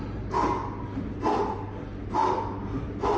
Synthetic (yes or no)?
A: no